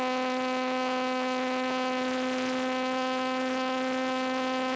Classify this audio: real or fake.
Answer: real